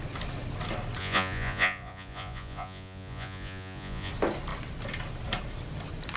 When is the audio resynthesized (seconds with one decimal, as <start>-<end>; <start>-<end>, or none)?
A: 1.0-4.1